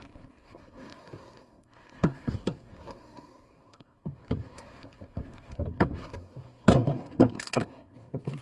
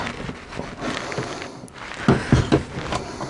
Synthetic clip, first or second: first